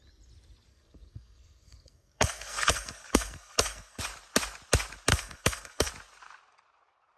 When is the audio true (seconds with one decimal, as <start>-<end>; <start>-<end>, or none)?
0.0-0.7; 4.0-5.1; 5.9-7.2